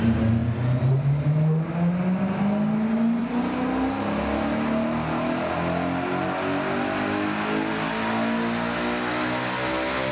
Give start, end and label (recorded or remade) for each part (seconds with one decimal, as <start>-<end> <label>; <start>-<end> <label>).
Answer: 0.0-10.1 recorded